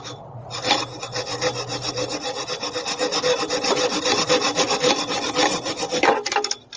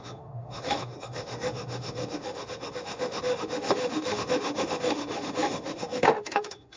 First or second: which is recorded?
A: first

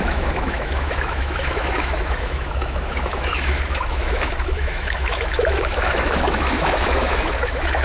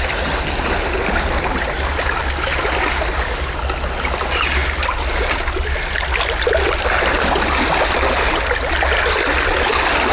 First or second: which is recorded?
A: second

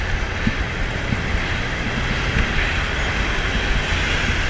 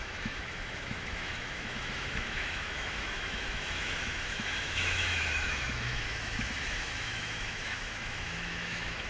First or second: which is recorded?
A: first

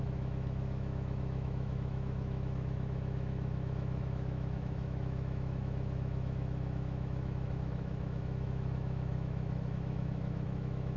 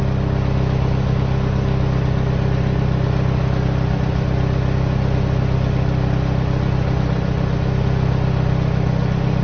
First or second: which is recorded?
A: second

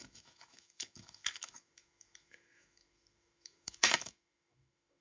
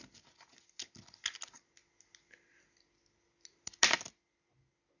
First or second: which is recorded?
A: second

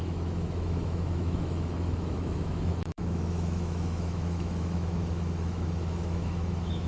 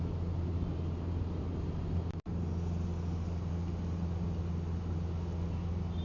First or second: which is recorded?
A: second